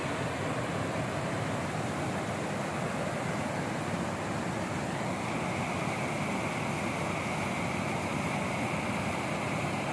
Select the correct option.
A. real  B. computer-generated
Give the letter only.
A